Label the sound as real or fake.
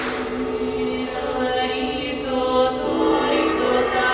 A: real